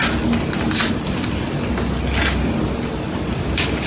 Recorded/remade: recorded